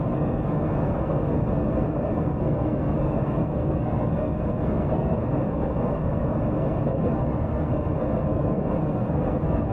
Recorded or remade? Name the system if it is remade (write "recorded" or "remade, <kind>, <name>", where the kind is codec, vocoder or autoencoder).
remade, codec, SNAC